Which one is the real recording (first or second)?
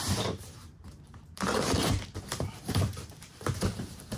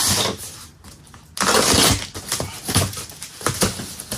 second